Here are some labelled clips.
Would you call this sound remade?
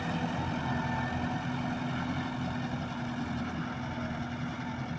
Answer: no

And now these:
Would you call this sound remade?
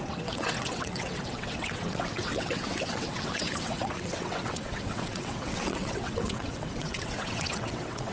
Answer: yes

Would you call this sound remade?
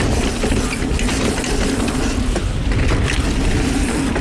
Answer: no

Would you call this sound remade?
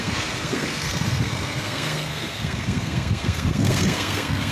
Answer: yes